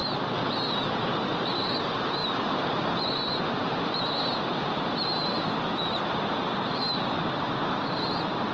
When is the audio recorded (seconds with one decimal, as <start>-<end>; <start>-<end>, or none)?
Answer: 1.8-8.5